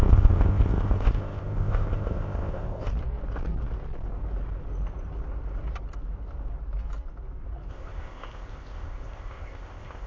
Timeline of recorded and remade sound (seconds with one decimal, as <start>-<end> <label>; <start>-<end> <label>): 0.0-2.9 remade; 2.9-7.7 recorded; 7.7-10.1 remade